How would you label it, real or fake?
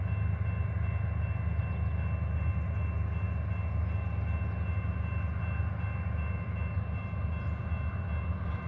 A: real